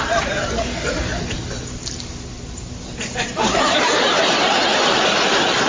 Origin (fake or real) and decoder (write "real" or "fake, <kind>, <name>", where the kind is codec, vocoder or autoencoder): real